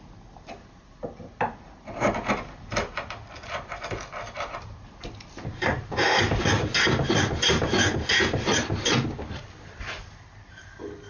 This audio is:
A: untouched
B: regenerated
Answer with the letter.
A